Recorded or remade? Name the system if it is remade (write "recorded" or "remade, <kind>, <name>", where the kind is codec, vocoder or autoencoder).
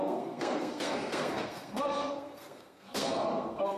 remade, codec, SNAC